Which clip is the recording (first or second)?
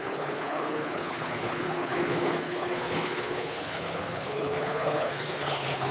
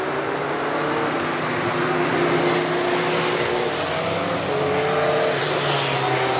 second